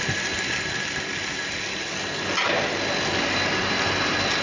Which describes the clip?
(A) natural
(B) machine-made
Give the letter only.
A